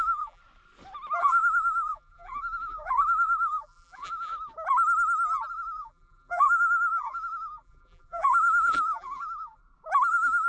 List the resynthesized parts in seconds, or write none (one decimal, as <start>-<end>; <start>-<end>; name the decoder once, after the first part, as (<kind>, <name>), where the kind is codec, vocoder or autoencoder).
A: 0.0-0.4 (vocoder, BigVGAN v2); 1.2-4.3; 5.5-9.6; 10.1-10.5